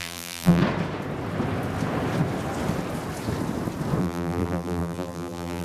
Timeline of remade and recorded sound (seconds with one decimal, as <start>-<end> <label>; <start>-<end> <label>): 0.0-0.6 remade; 0.6-4.0 recorded; 4.0-5.6 remade

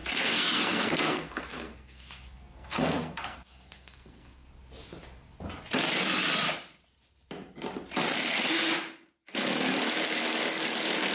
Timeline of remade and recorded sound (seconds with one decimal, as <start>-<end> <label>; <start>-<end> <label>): 0.0-4.5 remade; 4.5-11.1 recorded

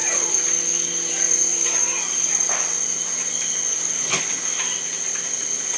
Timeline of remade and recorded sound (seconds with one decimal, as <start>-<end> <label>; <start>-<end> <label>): 0.0-1.1 remade; 1.1-1.5 recorded; 1.5-2.3 remade; 2.3-3.7 recorded; 3.7-4.2 remade; 4.2-5.8 recorded